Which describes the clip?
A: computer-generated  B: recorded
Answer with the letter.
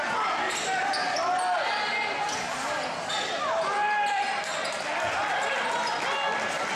B